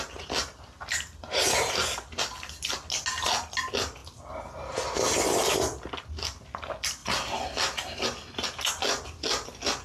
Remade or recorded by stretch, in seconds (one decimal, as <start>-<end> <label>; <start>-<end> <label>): 0.0-9.8 recorded